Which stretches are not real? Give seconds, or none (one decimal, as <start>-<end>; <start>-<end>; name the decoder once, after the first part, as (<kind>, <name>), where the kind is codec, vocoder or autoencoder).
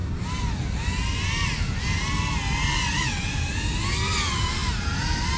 none